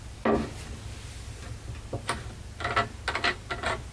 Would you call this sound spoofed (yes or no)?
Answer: no